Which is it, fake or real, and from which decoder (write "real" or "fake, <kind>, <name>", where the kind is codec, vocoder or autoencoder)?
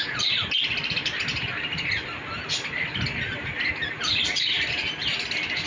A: real